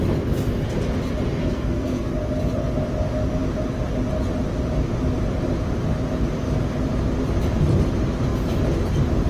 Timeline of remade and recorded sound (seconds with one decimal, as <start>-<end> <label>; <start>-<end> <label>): 0.0-1.4 recorded; 1.4-2.1 remade; 2.1-9.3 recorded